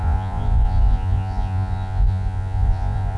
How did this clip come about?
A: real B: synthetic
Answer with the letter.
B